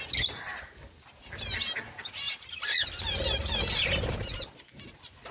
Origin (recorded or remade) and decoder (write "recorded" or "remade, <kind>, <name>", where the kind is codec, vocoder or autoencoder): recorded